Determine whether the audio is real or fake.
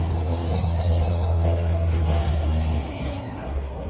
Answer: fake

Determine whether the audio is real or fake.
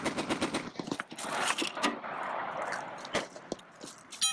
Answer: real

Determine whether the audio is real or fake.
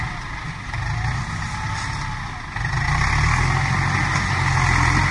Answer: real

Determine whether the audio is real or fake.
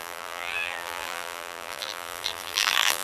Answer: fake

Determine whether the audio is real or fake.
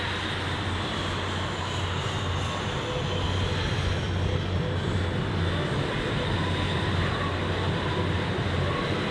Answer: real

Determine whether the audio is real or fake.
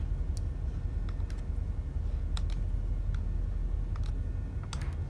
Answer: real